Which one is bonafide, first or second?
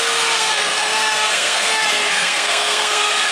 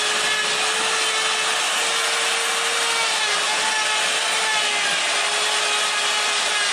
second